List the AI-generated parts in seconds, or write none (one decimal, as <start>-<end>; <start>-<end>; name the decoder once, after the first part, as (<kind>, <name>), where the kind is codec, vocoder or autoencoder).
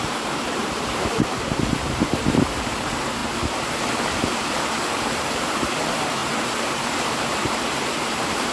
0.0-3.2 (vocoder, BigVGAN v2); 5.1-8.5